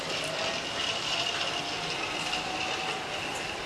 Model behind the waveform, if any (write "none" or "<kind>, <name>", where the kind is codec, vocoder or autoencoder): none